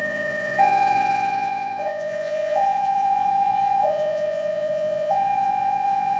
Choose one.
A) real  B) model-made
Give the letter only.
B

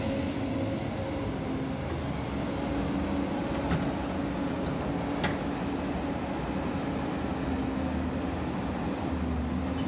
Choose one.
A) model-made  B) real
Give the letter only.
B